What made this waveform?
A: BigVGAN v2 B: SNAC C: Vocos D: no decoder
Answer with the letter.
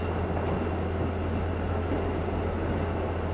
D